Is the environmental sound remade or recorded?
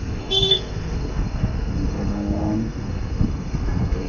remade